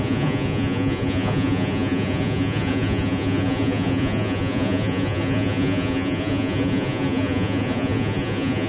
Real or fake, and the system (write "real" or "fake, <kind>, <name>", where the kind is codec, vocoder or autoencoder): fake, vocoder, Vocos